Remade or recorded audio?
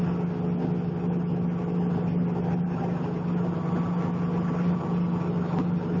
recorded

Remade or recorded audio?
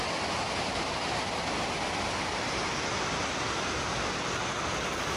recorded